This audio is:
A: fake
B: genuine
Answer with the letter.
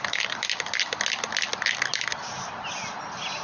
B